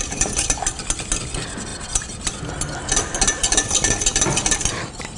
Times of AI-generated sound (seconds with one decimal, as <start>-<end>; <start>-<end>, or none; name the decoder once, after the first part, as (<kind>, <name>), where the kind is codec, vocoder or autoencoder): none